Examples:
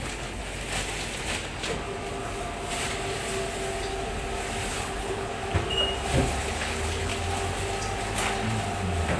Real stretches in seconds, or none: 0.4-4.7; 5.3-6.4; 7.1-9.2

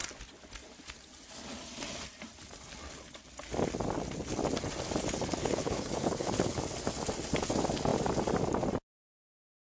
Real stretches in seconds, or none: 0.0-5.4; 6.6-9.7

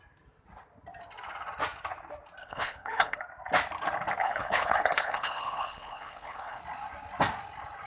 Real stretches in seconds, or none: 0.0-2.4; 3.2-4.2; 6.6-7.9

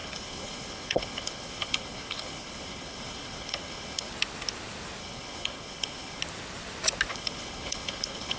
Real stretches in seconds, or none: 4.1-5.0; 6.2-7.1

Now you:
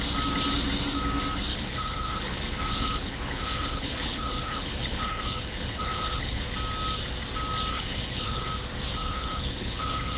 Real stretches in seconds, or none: 0.0-1.5; 6.4-7.7; 8.5-9.0

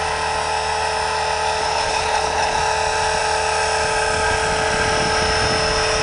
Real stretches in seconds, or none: 0.0-1.6; 2.6-6.0

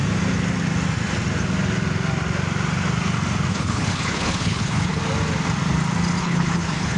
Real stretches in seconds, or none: 0.0-3.5; 5.0-6.2

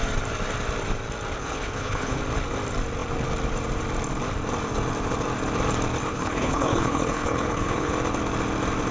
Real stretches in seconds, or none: 0.0-1.4; 2.2-6.1; 7.9-8.9